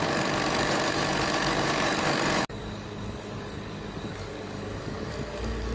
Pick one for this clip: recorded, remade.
remade